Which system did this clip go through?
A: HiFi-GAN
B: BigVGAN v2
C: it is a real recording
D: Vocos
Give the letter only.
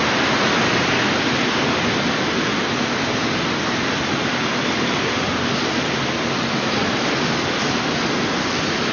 C